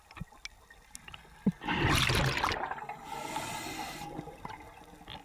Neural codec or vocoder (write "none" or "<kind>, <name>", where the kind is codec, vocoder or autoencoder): none